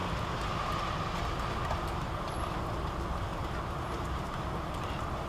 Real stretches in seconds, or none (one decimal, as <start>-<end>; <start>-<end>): 0.0-3.3; 4.5-5.3